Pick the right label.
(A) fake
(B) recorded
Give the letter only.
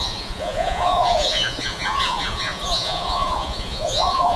A